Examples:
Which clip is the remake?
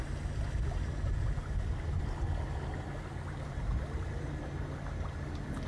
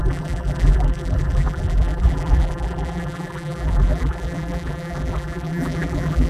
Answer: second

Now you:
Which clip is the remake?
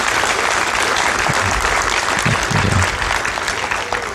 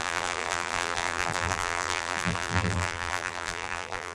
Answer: second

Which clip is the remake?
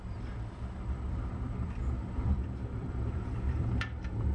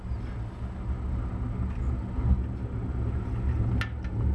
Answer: first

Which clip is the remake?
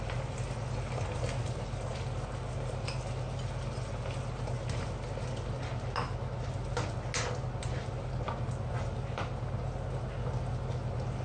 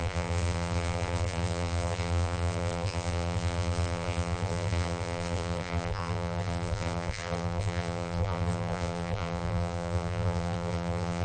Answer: second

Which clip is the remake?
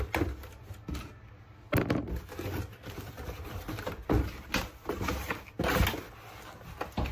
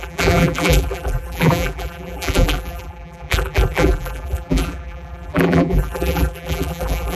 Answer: second